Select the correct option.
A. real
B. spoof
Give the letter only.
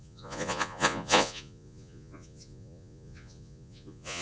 B